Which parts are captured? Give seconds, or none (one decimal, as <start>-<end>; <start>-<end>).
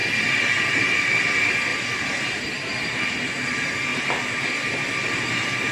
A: 0.0-1.7; 3.1-3.9